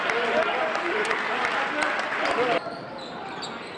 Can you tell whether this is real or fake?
real